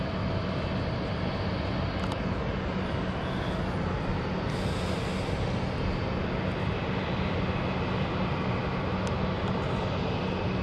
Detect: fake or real real